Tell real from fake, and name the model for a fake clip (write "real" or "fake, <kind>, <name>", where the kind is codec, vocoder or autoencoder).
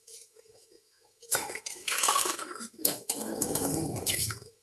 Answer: fake, autoencoder, DAC-VAE